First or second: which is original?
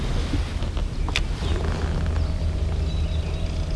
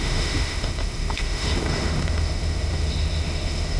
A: first